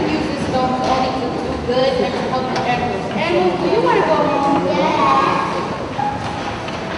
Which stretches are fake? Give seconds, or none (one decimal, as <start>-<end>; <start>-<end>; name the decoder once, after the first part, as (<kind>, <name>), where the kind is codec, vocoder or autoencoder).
none